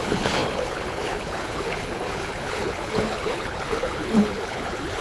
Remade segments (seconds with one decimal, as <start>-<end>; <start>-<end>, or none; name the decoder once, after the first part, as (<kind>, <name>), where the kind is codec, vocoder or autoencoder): 0.0-5.0 (codec, HILCodec)